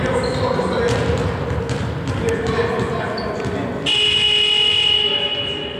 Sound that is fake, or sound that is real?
real